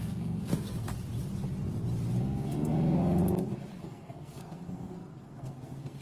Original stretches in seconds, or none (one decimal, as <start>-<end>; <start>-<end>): 0.9-2.2; 3.2-3.7